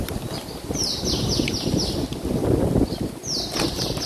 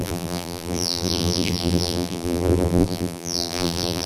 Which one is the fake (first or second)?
second